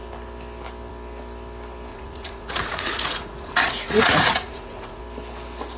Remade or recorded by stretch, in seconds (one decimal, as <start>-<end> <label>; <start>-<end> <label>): 0.0-1.9 recorded; 1.9-5.0 remade; 5.0-5.8 recorded